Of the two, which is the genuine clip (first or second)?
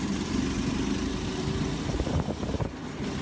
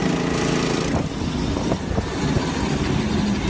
second